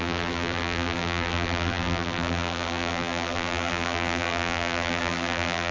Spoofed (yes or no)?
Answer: yes